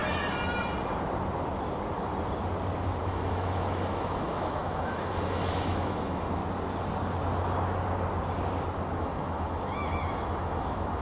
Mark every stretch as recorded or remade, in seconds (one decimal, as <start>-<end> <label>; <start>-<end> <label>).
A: 0.0-3.0 recorded; 3.0-6.4 remade; 6.4-9.0 recorded; 9.0-11.0 remade